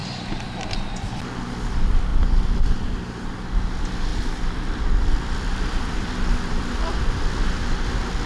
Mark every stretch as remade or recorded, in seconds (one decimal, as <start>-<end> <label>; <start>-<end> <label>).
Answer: 0.0-1.2 remade; 1.2-2.1 recorded; 2.1-3.1 remade; 3.1-4.1 recorded; 4.1-7.3 remade; 7.3-8.3 recorded